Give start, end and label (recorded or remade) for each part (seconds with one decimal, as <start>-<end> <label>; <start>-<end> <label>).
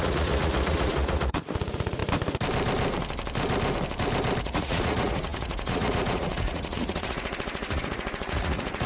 0.0-2.0 remade; 2.0-4.4 recorded; 4.4-8.9 remade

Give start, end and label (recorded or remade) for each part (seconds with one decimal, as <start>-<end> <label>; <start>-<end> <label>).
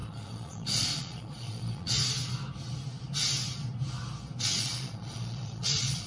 0.0-2.0 remade; 2.0-4.4 recorded; 4.4-6.1 remade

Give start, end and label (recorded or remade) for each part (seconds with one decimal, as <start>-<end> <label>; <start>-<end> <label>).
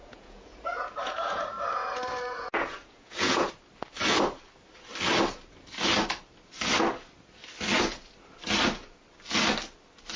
0.0-1.4 remade; 1.4-1.8 recorded; 1.8-3.5 remade; 3.5-10.2 recorded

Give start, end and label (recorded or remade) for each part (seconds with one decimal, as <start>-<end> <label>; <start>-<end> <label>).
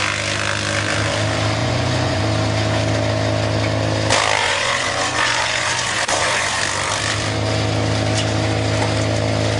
0.0-1.6 recorded; 1.6-2.2 remade; 2.2-4.4 recorded; 4.4-6.6 remade; 6.6-9.6 recorded